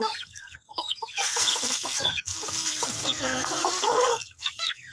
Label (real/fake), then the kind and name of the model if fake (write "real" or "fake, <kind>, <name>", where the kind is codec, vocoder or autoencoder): fake, codec, SNAC